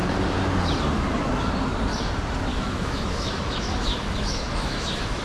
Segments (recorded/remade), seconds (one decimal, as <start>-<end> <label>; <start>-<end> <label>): 0.0-2.5 recorded; 2.5-5.2 remade